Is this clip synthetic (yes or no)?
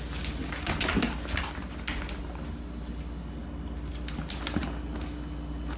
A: no